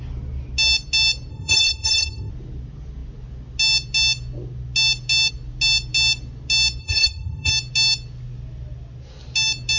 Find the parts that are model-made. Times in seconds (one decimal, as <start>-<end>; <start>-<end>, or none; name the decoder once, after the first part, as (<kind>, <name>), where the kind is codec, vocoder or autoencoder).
1.3-2.3 (codec, ZipCodec); 6.8-7.5